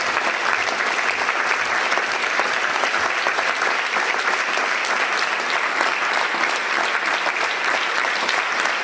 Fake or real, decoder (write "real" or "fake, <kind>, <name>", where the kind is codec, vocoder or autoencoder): real